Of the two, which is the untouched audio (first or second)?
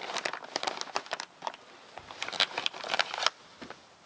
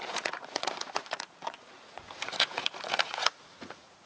first